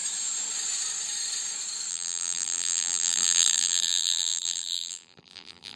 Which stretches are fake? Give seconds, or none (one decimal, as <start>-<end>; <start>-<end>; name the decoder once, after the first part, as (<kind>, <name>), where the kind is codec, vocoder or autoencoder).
1.9-5.8 (vocoder, BigVGAN v2)